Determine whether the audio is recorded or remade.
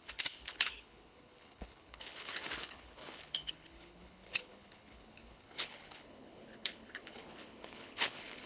remade